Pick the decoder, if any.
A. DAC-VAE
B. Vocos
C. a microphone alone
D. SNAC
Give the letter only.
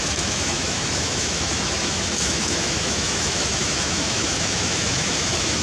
A